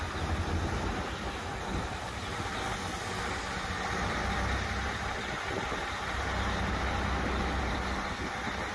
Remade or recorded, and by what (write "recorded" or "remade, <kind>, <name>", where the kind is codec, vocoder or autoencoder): recorded